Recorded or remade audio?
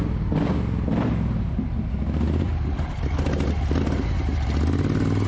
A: recorded